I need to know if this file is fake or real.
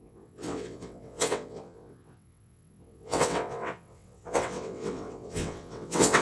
fake